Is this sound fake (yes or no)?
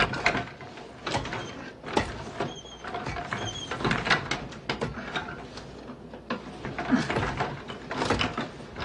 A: no